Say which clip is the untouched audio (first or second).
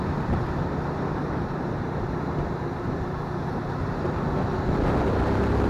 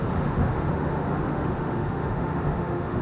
first